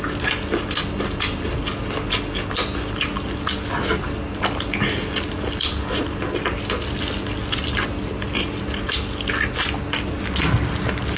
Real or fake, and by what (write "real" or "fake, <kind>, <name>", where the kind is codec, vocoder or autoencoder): real